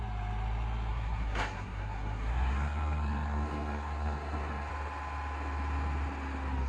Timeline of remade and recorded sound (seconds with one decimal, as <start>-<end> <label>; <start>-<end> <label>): 0.0-0.9 recorded; 0.9-4.7 remade; 4.7-6.7 recorded